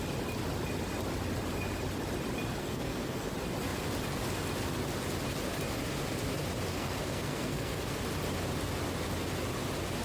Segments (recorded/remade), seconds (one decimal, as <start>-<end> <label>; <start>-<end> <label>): 0.0-2.6 recorded; 2.6-3.3 remade; 3.3-6.7 recorded; 6.7-8.0 remade; 8.0-10.0 recorded